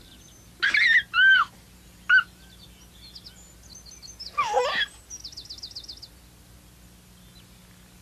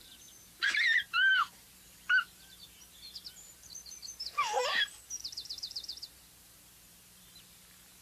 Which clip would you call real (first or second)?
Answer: first